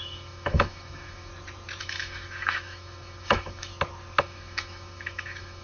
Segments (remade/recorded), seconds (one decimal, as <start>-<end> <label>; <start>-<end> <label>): 0.0-1.3 remade; 1.3-1.8 recorded; 1.8-3.7 remade; 3.7-4.2 recorded; 4.2-5.6 remade